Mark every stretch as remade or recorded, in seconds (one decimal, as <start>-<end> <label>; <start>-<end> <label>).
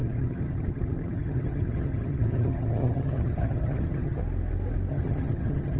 0.0-4.2 remade; 4.2-4.9 recorded; 4.9-5.8 remade